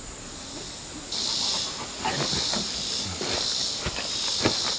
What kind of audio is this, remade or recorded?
recorded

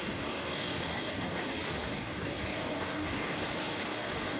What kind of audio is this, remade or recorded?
remade